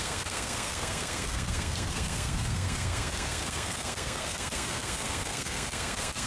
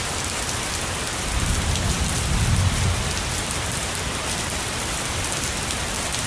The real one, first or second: second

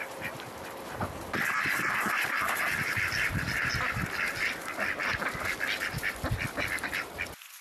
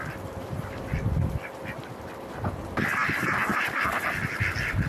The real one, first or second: second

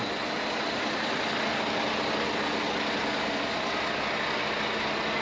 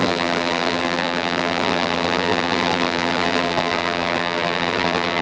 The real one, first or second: first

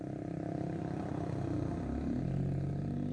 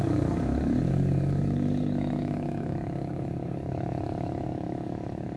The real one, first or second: first